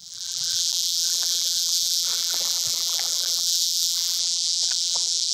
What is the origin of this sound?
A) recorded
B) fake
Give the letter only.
B